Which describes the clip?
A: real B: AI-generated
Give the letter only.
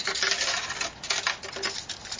A